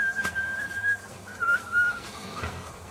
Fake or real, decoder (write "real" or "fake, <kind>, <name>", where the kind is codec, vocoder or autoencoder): fake, codec, SNAC